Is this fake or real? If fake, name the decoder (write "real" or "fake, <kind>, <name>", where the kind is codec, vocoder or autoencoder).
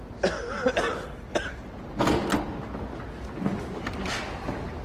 real